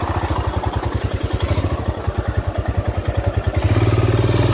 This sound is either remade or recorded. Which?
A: recorded